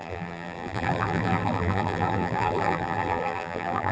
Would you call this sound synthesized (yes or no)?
yes